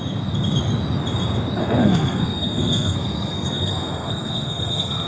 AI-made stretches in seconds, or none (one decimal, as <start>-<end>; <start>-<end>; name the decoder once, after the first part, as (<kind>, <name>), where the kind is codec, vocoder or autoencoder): 1.6-5.1 (codec, SNAC)

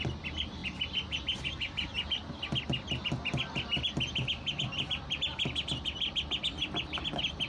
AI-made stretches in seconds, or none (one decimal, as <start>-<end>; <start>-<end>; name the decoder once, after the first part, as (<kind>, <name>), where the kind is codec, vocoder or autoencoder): none

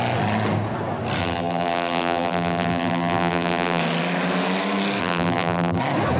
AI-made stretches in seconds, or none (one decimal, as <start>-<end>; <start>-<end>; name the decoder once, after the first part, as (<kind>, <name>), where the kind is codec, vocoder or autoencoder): 1.2-3.8 (vocoder, BigVGAN v2); 5.0-5.8